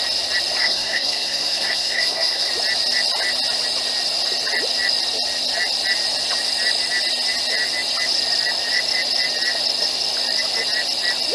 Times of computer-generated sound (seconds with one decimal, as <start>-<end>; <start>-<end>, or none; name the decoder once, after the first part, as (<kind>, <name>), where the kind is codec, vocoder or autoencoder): 0.6-2.5 (codec, SNAC)